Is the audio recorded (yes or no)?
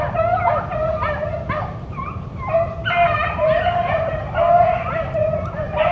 yes